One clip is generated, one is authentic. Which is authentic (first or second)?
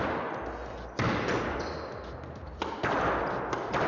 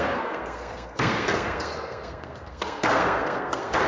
first